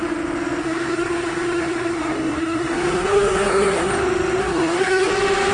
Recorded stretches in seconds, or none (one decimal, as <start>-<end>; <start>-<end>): 0.0-0.6; 3.9-4.4; 5.1-5.5